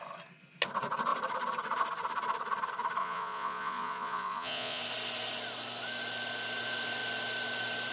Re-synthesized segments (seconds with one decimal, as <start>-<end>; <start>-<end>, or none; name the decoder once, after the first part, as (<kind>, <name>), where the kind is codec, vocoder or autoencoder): 3.0-4.8 (vocoder, Vocos)